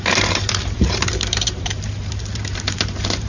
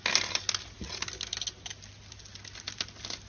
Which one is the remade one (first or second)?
first